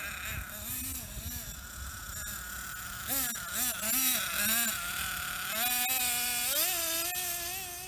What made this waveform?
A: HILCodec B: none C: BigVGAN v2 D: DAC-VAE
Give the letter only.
B